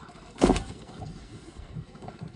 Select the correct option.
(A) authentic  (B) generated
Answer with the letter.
B